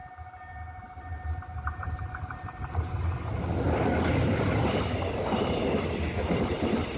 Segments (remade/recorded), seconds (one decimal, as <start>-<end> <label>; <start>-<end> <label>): 0.0-7.0 recorded